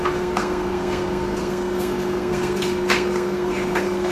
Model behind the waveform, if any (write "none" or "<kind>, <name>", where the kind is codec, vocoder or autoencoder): codec, SNAC